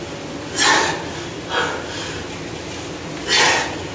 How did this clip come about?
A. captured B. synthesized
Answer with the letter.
A